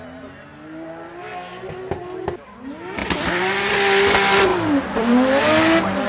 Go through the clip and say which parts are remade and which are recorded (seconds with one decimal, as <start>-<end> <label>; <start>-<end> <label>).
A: 0.0-4.5 recorded; 4.5-5.4 remade; 5.4-6.1 recorded